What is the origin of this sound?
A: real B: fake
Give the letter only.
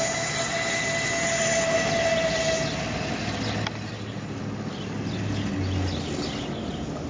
A